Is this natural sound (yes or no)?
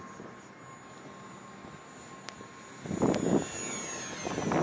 yes